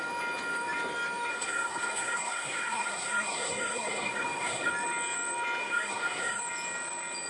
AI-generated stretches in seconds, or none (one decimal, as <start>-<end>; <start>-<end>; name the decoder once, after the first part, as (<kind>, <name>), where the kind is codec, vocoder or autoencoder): 1.3-4.7 (codec, SNAC); 5.6-6.4

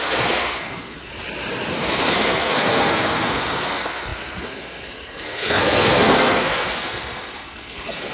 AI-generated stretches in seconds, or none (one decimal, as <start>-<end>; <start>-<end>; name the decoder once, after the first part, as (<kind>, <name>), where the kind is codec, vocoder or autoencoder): 0.0-1.1 (codec, SNAC); 1.7-8.1